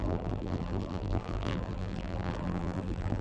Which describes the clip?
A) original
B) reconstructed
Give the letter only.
B